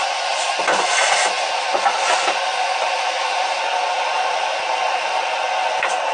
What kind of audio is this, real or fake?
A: real